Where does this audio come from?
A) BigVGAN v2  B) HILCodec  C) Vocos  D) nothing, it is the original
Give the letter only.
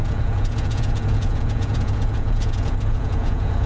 C